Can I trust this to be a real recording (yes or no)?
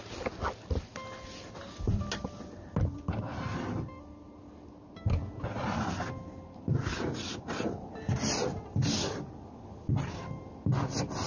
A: yes